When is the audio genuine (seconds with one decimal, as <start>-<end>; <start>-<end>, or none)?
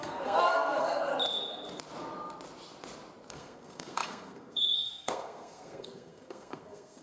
1.1-3.3